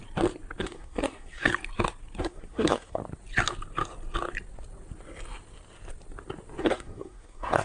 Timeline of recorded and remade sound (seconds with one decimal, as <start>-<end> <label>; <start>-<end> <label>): 0.0-0.6 recorded; 0.6-1.5 remade; 1.5-2.2 recorded; 2.2-3.0 remade; 3.0-6.6 recorded; 6.6-7.6 remade